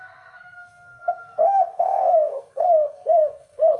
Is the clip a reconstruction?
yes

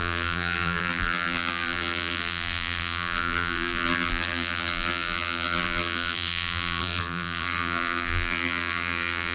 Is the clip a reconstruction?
yes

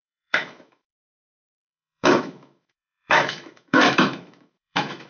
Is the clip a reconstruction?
yes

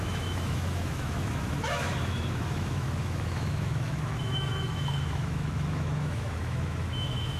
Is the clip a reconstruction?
yes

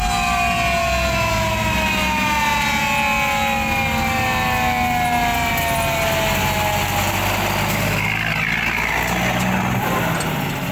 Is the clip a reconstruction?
no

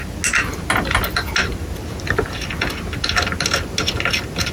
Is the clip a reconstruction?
no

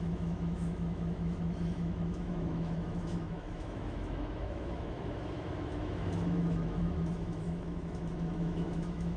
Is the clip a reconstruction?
yes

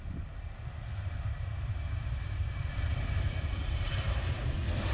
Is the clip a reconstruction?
yes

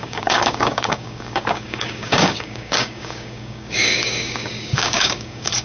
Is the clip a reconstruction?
yes